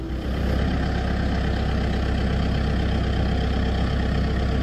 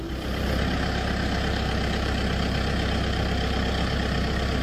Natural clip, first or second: first